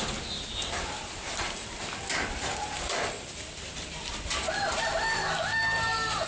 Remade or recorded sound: recorded